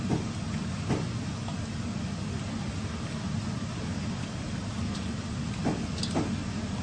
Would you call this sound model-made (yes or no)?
no